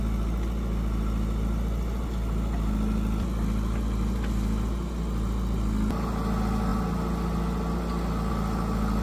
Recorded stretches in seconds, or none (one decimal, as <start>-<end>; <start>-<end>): 0.0-9.0

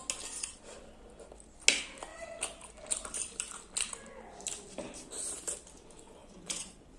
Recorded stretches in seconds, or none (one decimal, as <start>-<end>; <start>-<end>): 0.0-6.2

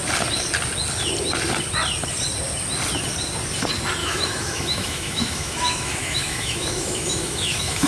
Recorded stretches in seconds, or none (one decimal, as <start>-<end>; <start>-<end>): 0.0-4.0

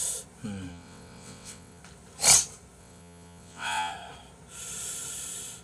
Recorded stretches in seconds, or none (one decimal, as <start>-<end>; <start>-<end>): 0.0-0.7; 1.8-2.8; 3.9-5.6

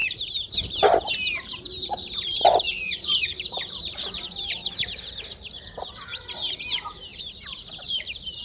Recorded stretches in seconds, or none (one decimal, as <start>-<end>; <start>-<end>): 7.1-7.7